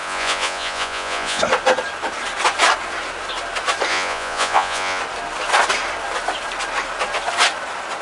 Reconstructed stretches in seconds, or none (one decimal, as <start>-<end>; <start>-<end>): 0.0-1.4; 3.9-5.0